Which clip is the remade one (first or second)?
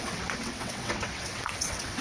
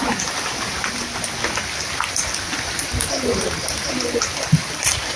first